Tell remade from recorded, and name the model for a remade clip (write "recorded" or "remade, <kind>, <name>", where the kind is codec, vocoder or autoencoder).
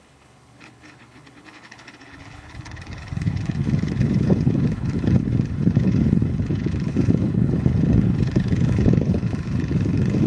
remade, codec, HILCodec